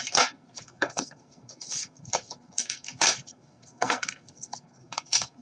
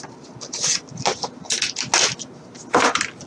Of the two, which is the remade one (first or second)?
first